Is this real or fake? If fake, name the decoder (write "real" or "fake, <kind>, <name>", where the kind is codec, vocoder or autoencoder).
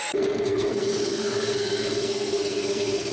fake, codec, SNAC